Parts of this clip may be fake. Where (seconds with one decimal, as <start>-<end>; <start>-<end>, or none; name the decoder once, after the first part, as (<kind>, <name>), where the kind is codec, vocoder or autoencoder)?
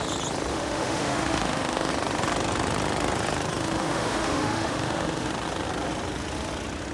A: 0.5-1.9 (autoencoder, DAC-VAE); 3.6-5.3